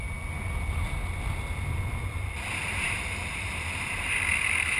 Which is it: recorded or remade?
recorded